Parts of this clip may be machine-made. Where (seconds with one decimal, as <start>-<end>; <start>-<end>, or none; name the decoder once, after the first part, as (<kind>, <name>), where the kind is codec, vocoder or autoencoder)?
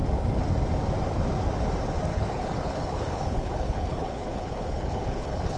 2.1-5.6 (codec, HILCodec)